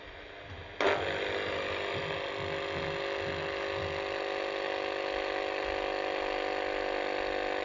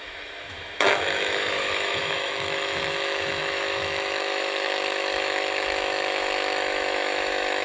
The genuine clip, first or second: first